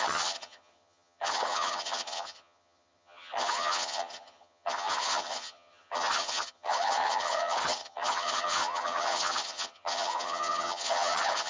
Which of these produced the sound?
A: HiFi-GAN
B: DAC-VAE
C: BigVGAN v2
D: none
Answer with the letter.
A